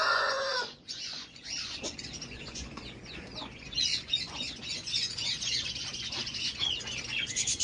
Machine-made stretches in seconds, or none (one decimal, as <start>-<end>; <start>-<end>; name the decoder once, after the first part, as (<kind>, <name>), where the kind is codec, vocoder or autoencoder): 0.0-7.6 (vocoder, Vocos)